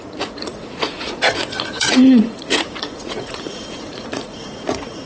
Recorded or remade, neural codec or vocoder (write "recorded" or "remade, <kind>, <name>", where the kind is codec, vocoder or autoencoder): remade, vocoder, Vocos